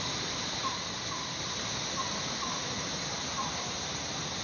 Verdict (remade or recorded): recorded